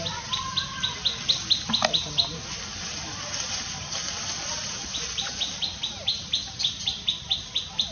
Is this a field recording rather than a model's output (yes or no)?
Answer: yes